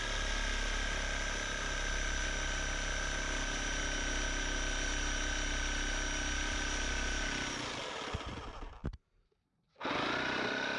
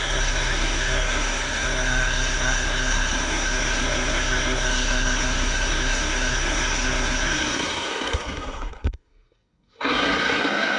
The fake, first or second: second